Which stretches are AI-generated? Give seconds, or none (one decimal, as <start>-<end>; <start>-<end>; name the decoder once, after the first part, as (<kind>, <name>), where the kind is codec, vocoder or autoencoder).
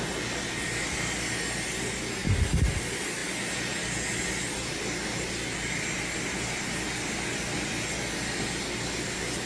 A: none